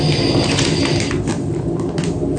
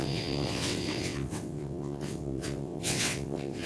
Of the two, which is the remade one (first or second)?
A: second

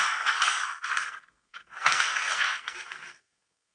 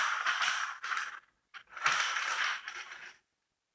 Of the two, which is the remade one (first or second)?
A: first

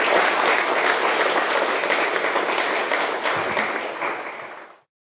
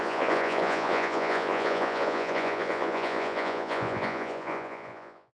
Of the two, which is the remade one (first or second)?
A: second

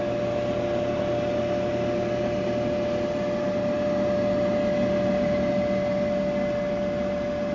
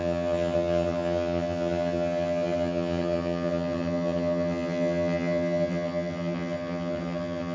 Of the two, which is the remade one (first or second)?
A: second